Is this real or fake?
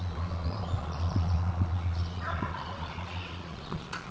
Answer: fake